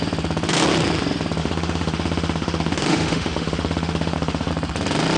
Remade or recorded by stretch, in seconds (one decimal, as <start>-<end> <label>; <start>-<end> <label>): 0.0-1.4 recorded; 1.4-4.5 remade; 4.5-5.2 recorded